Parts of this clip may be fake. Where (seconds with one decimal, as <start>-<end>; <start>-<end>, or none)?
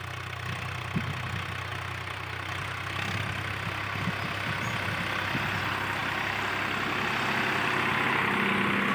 none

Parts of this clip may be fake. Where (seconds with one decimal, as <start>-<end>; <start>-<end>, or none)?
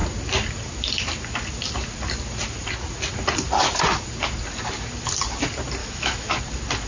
5.8-6.4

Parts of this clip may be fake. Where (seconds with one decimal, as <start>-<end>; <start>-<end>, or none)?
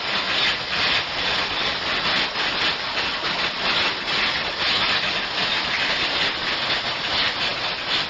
none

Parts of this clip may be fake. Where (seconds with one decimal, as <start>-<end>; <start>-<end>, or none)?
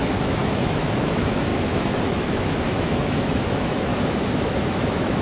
0.0-3.9; 4.7-5.2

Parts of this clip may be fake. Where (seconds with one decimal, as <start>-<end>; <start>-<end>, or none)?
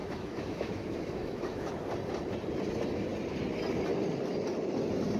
0.0-1.7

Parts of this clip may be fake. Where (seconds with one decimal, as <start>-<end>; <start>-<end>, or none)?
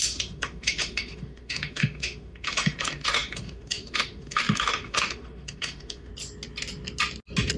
0.0-6.1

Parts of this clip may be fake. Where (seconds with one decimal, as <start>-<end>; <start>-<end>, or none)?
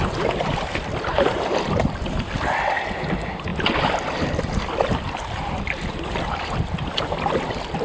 none